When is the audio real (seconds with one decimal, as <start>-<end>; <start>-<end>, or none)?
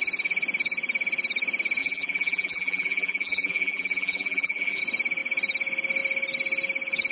0.0-1.8; 4.8-7.1